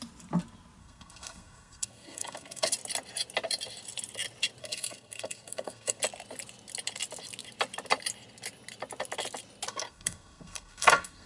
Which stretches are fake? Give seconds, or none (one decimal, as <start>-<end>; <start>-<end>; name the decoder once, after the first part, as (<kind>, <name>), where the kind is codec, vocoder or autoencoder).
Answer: 0.8-2.7 (codec, SNAC); 4.6-6.0; 9.7-11.3